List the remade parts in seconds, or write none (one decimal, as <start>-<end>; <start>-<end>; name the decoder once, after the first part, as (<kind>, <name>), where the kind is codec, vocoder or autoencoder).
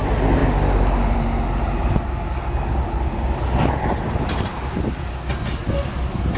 none